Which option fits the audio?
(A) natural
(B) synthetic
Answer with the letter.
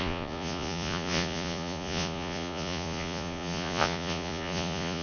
B